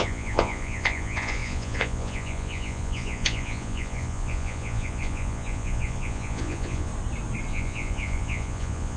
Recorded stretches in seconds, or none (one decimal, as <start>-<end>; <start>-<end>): 6.9-7.5